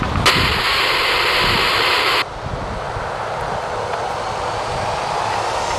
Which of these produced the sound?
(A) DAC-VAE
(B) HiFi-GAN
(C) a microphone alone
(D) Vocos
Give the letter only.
C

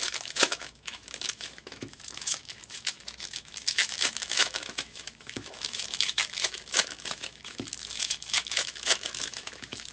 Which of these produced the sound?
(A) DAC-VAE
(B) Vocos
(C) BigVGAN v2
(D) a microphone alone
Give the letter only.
A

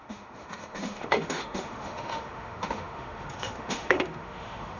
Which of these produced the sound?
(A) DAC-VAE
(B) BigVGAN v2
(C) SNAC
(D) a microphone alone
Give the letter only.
A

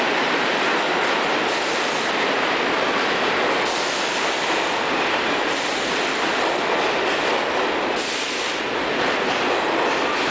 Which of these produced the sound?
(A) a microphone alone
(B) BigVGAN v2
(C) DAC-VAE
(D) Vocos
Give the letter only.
A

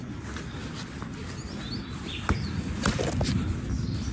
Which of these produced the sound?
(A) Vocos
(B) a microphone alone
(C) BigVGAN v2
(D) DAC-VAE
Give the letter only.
B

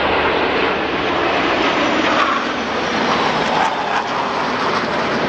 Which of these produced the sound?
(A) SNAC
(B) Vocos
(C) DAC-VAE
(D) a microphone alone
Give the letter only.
D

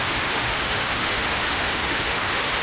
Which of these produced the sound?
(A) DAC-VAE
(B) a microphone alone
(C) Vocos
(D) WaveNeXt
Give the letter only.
A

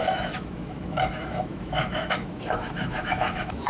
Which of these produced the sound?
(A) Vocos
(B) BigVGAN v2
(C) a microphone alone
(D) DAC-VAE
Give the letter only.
D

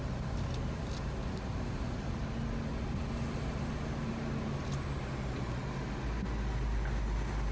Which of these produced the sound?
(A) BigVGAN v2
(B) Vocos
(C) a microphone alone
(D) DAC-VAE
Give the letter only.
C